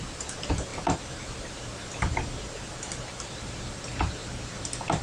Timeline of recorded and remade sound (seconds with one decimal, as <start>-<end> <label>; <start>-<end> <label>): 0.0-0.7 recorded; 0.7-3.7 remade; 3.7-4.2 recorded; 4.2-5.0 remade